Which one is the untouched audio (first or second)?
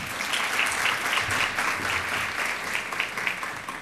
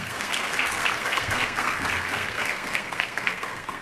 first